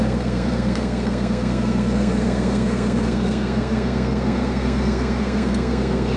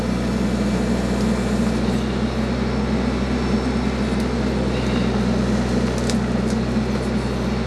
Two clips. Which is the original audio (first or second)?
second